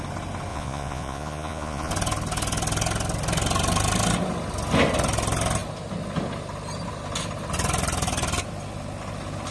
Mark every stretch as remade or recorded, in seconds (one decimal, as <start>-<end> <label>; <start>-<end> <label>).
0.0-0.5 recorded; 0.5-1.9 remade; 1.9-9.5 recorded